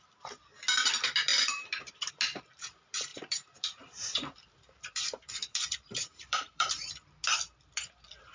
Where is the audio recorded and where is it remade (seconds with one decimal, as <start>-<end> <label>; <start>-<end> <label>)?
0.0-3.1 recorded; 3.1-6.9 remade; 6.9-8.3 recorded